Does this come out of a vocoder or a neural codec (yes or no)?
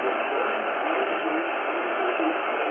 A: yes